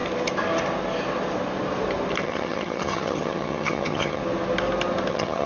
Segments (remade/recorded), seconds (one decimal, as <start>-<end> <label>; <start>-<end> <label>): 0.0-2.2 recorded; 2.2-4.2 remade; 4.2-5.1 recorded; 5.1-5.5 remade